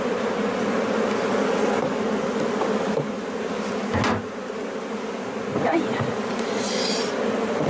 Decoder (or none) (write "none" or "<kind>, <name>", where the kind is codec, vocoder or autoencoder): none